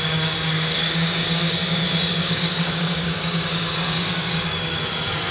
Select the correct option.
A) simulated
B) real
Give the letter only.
A